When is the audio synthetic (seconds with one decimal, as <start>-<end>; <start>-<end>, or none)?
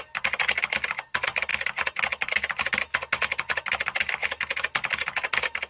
none